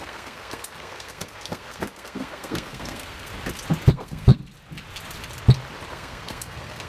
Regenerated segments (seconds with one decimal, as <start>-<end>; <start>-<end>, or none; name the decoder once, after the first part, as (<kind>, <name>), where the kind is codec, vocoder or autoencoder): 0.0-3.3 (codec, SNAC); 3.9-4.4; 5.9-6.9